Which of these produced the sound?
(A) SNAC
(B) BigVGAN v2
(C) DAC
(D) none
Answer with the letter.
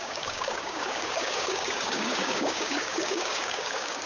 C